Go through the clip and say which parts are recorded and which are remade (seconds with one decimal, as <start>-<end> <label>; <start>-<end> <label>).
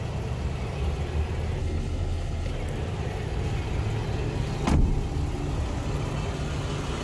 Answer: 0.0-1.6 recorded; 1.6-2.5 remade; 2.5-7.0 recorded